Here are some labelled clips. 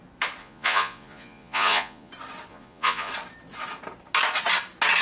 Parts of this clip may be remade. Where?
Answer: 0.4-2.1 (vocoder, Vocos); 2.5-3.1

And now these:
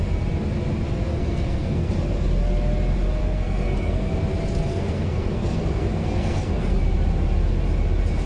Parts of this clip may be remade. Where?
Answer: 1.1-1.9 (codec, SNAC); 3.2-4.1; 4.7-6.8

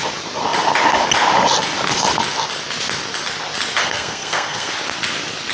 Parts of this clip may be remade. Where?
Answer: 3.8-4.7 (codec, SNAC)

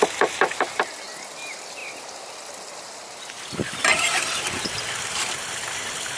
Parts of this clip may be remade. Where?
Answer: none

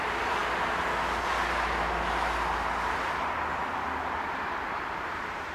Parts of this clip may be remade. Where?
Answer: none

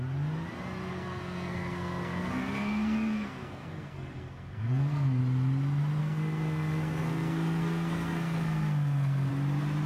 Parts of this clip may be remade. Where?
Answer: 0.9-5.2 (codec, SNAC); 6.0-9.3

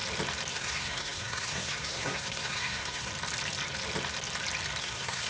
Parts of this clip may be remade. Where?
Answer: 0.5-3.1 (codec, SNAC); 4.8-5.3